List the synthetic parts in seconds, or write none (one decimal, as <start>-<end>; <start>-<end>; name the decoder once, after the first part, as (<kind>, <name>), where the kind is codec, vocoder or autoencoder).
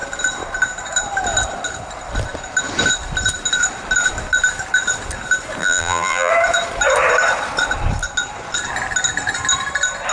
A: 5.6-6.3 (vocoder, BigVGAN v2)